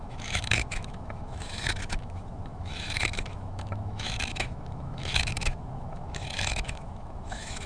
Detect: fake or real fake